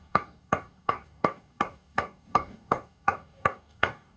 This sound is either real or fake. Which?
fake